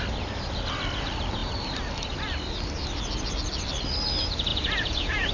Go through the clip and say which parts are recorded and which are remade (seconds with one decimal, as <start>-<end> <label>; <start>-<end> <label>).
0.0-4.5 recorded; 4.5-5.3 remade